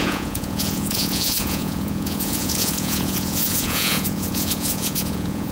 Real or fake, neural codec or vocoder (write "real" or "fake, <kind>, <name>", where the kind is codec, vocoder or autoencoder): fake, vocoder, Vocos